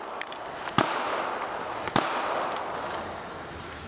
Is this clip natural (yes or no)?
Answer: yes